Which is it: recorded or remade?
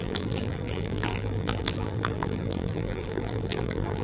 remade